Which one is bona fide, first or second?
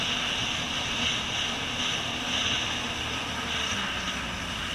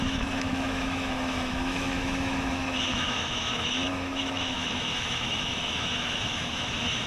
first